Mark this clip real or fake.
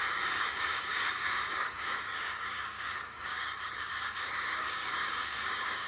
fake